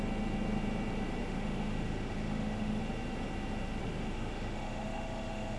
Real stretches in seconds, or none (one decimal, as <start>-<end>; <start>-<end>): 0.0-1.2; 2.8-3.8